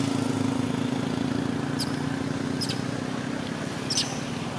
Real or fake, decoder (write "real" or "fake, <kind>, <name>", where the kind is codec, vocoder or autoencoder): real